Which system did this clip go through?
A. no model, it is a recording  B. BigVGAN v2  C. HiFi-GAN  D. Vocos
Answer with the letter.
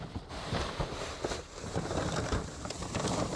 B